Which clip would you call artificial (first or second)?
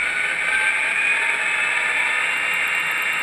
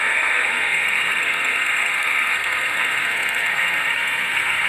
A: second